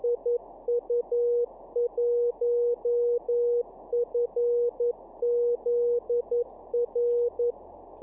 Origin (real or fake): real